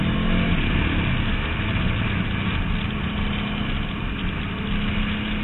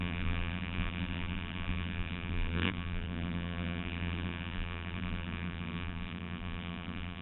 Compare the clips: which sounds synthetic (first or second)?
second